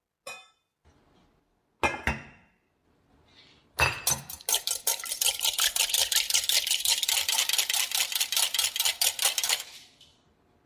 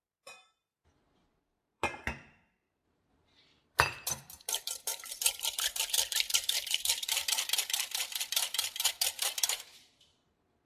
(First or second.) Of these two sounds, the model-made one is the second